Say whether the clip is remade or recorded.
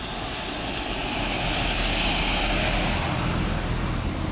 recorded